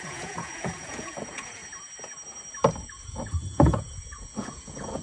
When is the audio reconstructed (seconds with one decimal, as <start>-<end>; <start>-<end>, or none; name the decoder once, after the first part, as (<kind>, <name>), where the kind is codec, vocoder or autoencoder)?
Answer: 0.0-1.6 (vocoder, Vocos); 2.8-5.0